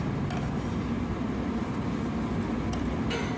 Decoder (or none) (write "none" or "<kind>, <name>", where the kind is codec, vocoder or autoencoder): vocoder, BigVGAN v2